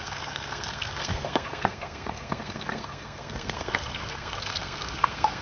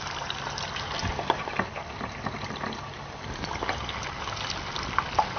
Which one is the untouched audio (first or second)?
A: second